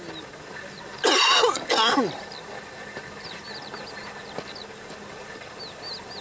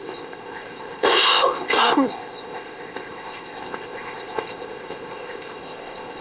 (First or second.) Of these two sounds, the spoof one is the second